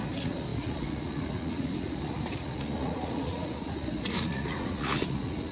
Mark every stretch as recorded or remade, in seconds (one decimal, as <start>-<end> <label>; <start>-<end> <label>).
0.0-5.5 remade